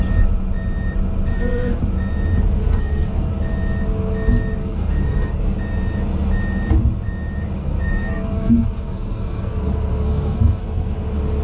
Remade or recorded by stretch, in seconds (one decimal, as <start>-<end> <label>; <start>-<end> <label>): 0.0-1.3 recorded; 1.3-1.8 remade; 1.8-2.6 recorded; 2.6-3.3 remade; 3.3-4.6 recorded; 4.6-5.4 remade; 5.4-7.6 recorded; 7.6-11.0 remade; 11.0-11.4 recorded